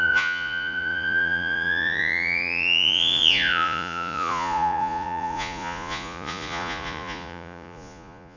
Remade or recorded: remade